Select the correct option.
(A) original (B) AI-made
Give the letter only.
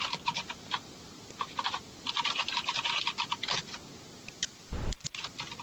B